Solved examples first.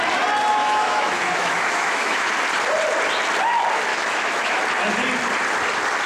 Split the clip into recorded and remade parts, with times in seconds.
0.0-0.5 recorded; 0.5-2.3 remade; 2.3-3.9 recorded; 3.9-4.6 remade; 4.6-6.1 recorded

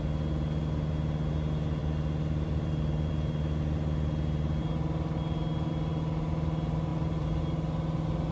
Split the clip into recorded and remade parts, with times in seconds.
0.0-1.8 recorded; 1.8-3.1 remade; 3.1-6.9 recorded; 6.9-7.4 remade; 7.4-8.3 recorded

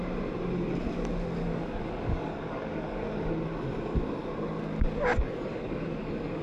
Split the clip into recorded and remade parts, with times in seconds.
0.0-1.4 recorded; 1.4-3.3 remade; 3.3-5.1 recorded; 5.1-6.4 remade

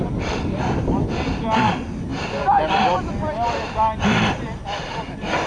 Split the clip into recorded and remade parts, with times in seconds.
0.0-5.5 recorded

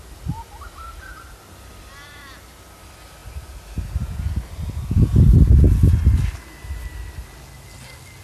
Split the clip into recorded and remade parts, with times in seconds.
0.0-8.2 recorded

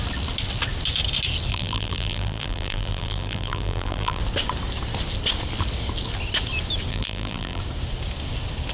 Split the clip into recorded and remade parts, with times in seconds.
0.0-1.5 recorded; 1.5-4.2 remade; 4.2-6.9 recorded; 6.9-7.6 remade; 7.6-8.7 recorded